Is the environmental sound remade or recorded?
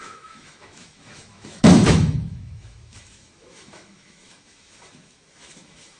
remade